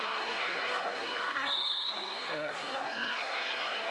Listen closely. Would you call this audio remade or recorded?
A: remade